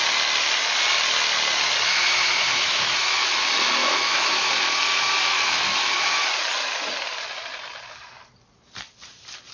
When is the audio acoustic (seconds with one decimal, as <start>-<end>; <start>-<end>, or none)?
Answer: 0.0-1.9; 3.3-3.8; 4.5-5.3; 6.2-9.5